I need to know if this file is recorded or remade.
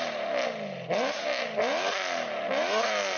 recorded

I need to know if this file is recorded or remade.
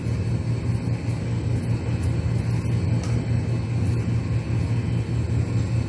recorded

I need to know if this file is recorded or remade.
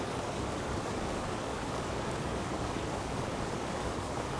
remade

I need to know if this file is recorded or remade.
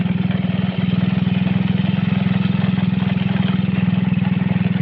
recorded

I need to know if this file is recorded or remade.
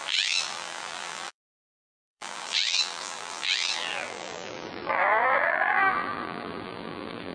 remade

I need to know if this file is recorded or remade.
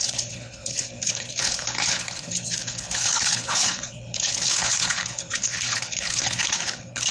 remade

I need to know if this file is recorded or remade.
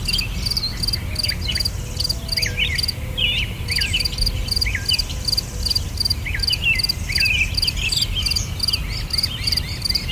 recorded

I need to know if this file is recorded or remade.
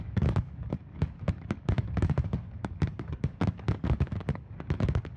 remade